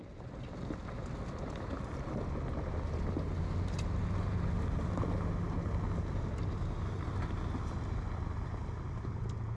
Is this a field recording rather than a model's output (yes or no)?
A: yes